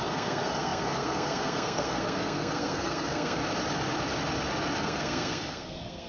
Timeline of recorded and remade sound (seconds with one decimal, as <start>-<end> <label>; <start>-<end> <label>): 0.0-3.4 remade; 3.4-4.8 recorded; 4.8-6.1 remade